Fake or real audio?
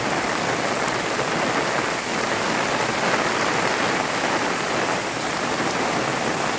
real